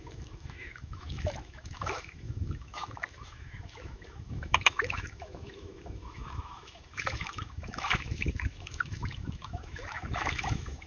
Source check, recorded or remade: remade